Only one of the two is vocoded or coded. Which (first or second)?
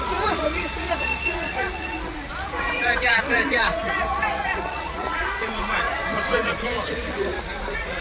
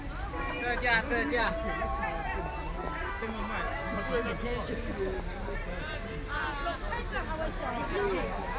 first